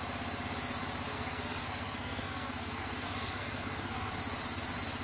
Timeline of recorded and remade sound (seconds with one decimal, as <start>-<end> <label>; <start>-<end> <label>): 0.0-1.1 recorded; 1.1-4.1 remade; 4.1-5.0 recorded